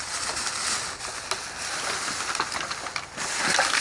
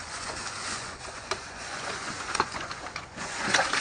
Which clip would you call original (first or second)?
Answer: first